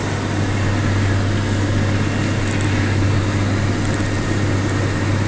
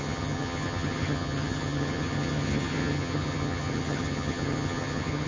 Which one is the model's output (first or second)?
second